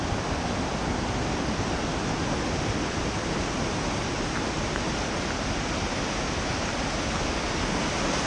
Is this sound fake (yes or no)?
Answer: no